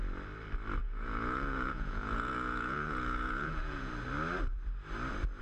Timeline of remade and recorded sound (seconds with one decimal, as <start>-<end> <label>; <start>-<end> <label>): 0.0-0.8 recorded; 0.8-3.9 remade; 3.9-5.4 recorded